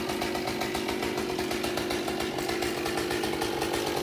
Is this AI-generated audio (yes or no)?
no